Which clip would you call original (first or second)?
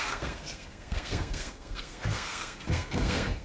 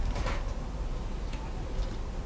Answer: second